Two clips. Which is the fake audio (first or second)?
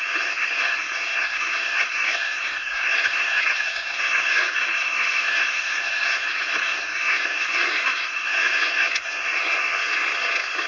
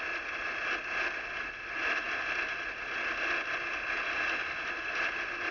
first